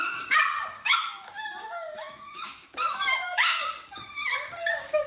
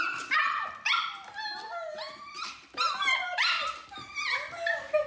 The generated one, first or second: first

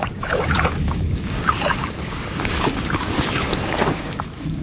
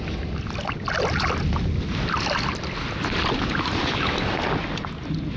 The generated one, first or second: first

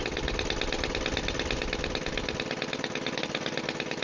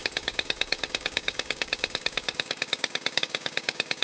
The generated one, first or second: second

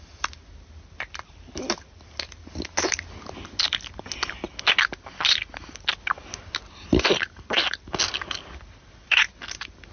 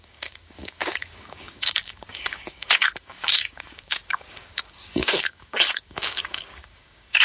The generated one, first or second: second